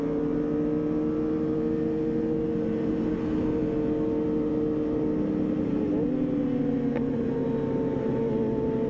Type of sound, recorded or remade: recorded